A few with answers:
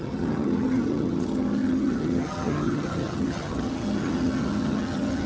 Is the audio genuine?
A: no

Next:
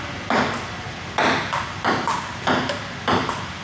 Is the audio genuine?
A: yes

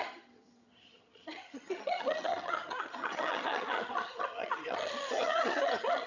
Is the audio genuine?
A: no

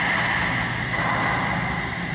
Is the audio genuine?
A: yes